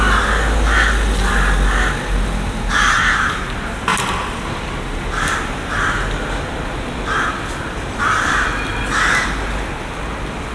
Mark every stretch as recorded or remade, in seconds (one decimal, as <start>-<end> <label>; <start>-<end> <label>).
0.0-10.5 recorded